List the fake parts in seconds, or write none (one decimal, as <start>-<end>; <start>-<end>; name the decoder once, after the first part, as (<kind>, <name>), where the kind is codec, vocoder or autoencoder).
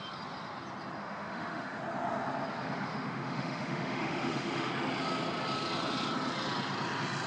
1.0-1.8 (autoencoder, DAC-VAE); 2.9-4.7